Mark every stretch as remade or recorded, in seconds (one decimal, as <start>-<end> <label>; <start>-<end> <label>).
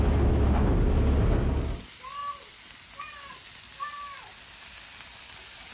0.0-5.7 recorded